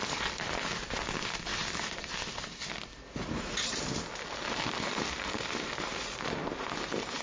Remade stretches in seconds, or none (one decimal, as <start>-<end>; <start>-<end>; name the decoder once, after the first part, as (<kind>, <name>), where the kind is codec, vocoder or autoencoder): none